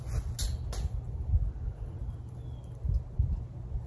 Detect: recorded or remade recorded